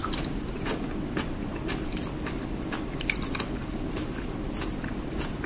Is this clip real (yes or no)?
yes